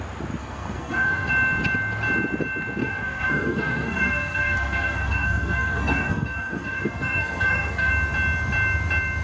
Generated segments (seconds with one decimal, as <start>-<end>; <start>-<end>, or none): 0.4-1.3; 2.8-7.9